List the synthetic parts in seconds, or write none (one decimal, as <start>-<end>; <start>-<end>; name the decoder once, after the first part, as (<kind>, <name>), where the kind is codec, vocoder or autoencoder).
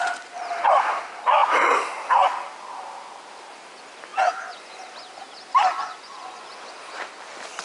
4.1-4.8 (vocoder, Vocos); 5.7-6.5